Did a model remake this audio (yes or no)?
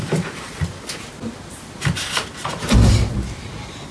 no